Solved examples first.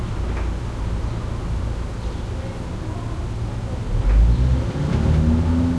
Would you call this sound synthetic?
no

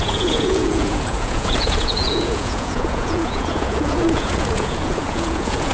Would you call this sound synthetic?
yes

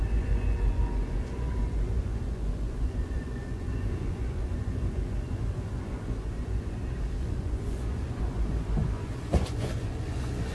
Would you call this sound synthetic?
yes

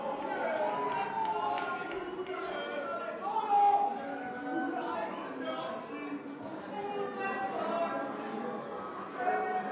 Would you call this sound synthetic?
no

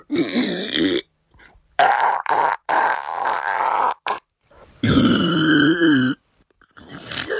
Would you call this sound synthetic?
yes